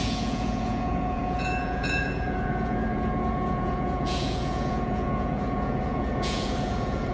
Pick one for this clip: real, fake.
fake